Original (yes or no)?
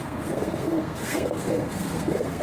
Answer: no